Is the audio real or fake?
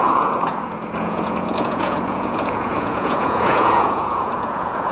fake